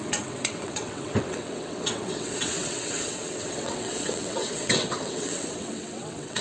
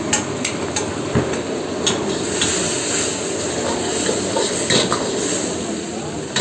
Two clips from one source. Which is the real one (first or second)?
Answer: second